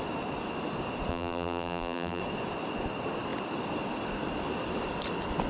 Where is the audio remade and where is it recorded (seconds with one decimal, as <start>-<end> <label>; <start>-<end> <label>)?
0.0-1.1 recorded; 1.1-2.2 remade; 2.2-5.5 recorded